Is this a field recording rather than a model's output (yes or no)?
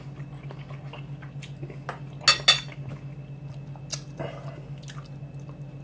yes